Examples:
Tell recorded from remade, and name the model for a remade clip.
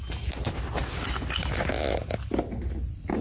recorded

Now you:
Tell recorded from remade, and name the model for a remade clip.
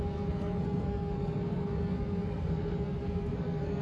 remade, codec, SNAC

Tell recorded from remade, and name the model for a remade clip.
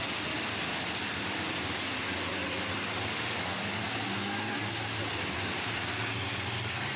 recorded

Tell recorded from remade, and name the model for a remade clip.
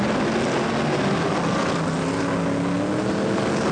recorded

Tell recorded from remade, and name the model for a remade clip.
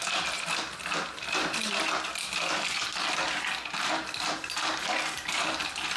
recorded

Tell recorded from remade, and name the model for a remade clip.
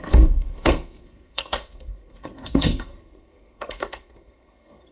remade, codec, SNAC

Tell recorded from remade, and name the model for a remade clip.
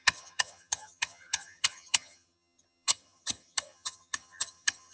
remade, vocoder, HiFi-GAN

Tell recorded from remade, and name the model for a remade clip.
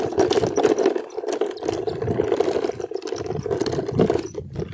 recorded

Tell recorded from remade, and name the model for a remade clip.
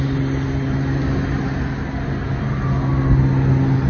recorded